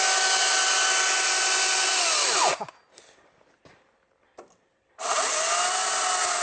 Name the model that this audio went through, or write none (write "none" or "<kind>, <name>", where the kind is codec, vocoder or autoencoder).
none